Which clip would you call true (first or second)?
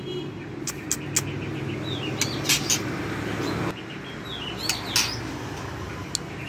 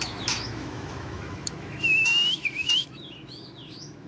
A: first